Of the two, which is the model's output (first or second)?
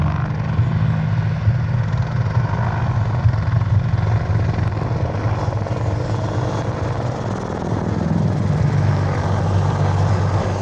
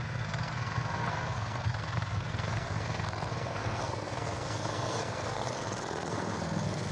second